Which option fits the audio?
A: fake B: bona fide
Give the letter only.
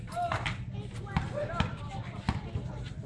B